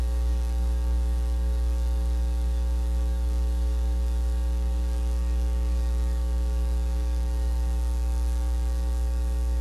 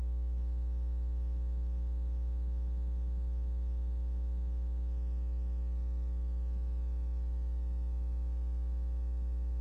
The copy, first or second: first